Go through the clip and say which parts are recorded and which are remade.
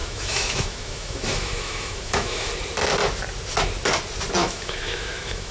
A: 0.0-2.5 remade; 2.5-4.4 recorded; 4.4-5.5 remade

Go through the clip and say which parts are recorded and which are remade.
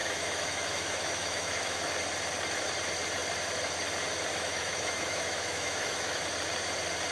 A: 0.0-1.9 remade; 1.9-4.3 recorded; 4.3-6.2 remade; 6.2-7.1 recorded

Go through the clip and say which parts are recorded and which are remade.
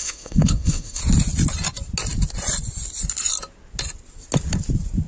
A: 0.0-1.0 remade; 1.0-5.1 recorded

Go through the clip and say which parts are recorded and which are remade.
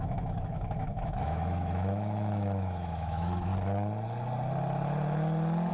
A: 0.0-3.5 remade; 3.5-5.7 recorded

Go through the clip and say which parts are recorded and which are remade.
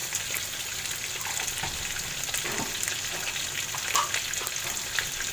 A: 0.0-5.3 recorded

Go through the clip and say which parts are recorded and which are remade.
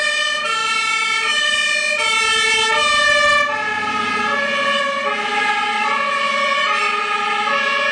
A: 0.0-7.9 recorded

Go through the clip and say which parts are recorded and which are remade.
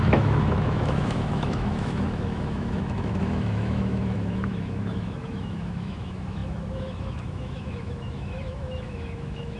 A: 0.0-9.6 remade